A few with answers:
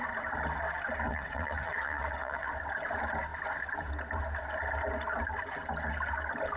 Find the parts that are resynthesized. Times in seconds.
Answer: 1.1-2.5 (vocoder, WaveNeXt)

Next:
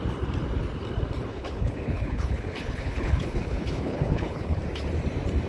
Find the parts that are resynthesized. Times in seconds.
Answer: 1.3-4.6 (codec, HILCodec)

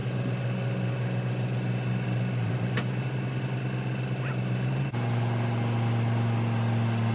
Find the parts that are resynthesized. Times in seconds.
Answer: none